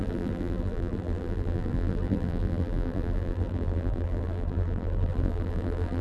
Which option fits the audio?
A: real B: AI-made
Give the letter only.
B